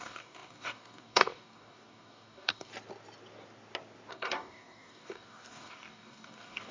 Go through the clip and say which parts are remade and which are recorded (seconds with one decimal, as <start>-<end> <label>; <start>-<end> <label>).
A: 0.0-2.7 remade; 2.7-4.1 recorded; 4.1-6.7 remade